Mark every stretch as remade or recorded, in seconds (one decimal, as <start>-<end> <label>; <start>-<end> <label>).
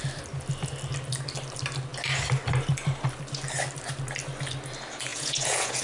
0.0-5.1 recorded; 5.1-5.8 remade